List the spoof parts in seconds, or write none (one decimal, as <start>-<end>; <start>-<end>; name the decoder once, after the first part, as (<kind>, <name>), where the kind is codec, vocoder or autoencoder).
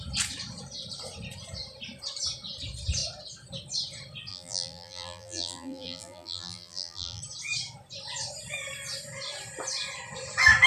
4.3-7.2 (vocoder, BigVGAN v2)